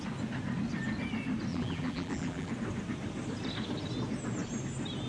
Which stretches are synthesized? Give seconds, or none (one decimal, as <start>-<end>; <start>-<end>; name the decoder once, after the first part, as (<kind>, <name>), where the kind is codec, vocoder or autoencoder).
1.5-2.5 (vocoder, BigVGAN v2)